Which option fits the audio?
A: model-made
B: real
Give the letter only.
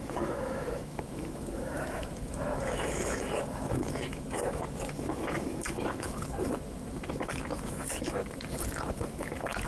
A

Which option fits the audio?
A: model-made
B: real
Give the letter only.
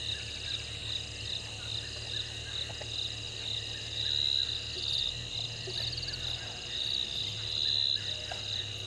B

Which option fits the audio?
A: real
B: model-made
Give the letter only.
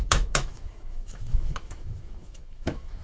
B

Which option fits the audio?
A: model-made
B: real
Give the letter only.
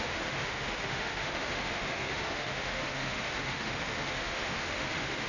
A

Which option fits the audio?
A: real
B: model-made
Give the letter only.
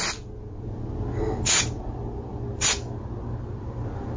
A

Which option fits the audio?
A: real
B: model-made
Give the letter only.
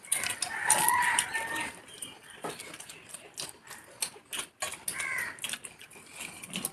A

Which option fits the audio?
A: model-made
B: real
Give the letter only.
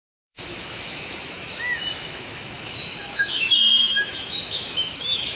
A